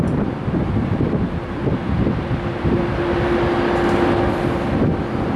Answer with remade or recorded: recorded